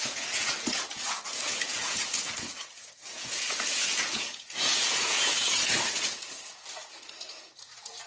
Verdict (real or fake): fake